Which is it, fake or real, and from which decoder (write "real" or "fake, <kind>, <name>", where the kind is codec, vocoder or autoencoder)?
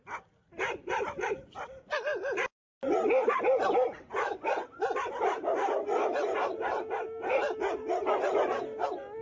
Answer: real